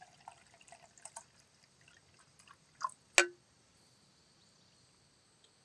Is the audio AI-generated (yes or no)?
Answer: no